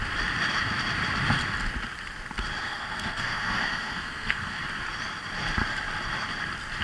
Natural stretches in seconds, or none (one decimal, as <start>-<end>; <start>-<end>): 0.0-2.6; 4.6-6.8

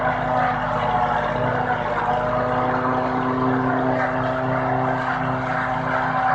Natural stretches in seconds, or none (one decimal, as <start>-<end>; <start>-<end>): 0.0-6.3